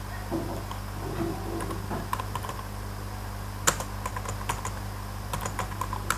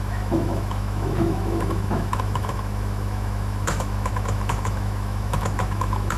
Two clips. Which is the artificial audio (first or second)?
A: second